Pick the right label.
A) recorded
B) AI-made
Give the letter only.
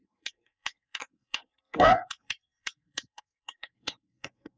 B